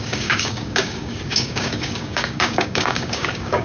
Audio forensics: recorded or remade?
remade